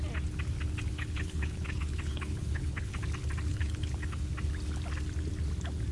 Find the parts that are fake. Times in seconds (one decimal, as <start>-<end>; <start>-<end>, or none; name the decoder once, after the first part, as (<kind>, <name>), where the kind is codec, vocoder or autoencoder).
0.9-2.9 (codec, HILCodec); 3.5-4.3